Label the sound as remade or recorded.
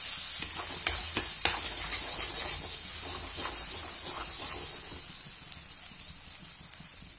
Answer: recorded